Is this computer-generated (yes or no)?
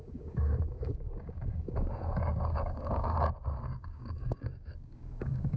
yes